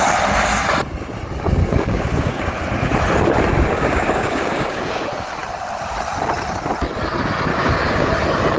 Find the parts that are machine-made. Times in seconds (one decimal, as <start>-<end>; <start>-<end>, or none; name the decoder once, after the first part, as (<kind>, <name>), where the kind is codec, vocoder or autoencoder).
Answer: 1.6-2.5 (codec, DAC); 3.7-5.0; 7.5-8.1